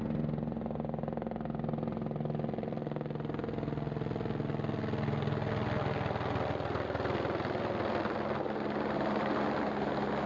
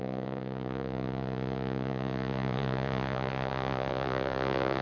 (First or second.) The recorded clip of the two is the first